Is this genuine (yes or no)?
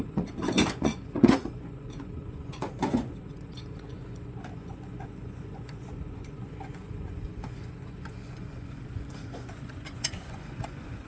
no